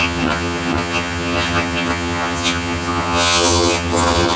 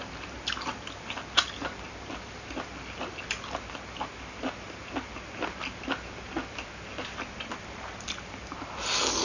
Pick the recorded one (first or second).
second